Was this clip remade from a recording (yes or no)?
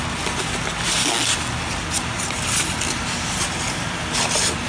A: no